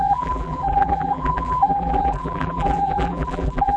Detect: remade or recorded remade